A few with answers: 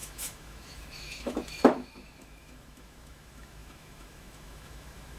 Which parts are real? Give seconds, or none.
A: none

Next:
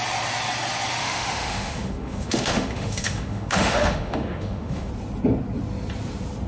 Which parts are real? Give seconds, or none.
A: 0.0-1.0; 4.9-6.5